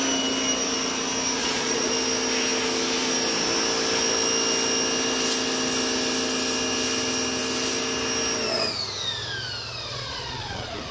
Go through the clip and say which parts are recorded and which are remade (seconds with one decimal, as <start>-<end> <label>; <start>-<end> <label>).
0.0-1.4 recorded; 1.4-1.9 remade; 1.9-9.9 recorded; 9.9-10.9 remade